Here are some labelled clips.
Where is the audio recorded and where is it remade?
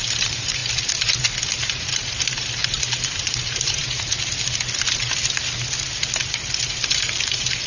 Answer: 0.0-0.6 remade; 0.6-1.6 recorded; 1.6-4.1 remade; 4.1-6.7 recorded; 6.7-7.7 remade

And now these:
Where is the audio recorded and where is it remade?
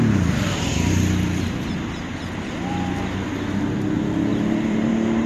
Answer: 0.0-4.3 recorded; 4.3-5.3 remade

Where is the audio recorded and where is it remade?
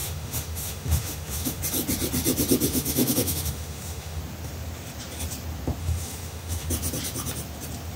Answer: 0.0-1.6 remade; 1.6-2.7 recorded; 2.7-4.2 remade; 4.2-5.8 recorded; 5.8-6.7 remade; 6.7-8.0 recorded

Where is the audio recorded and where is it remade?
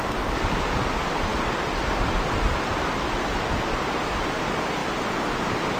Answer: 0.0-5.8 recorded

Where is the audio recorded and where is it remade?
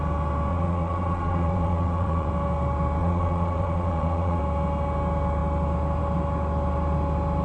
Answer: 0.0-0.5 recorded; 0.5-2.3 remade; 2.3-3.0 recorded; 3.0-4.4 remade; 4.4-7.4 recorded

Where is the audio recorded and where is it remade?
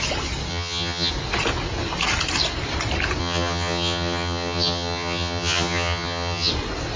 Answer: 0.0-0.5 recorded; 0.5-1.1 remade; 1.1-3.2 recorded; 3.2-6.5 remade; 6.5-7.0 recorded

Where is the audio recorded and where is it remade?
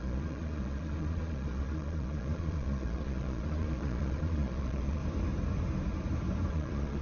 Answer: 0.0-5.0 remade; 5.0-6.5 recorded; 6.5-7.0 remade